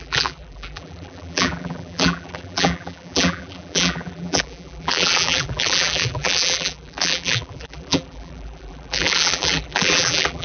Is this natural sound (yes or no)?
no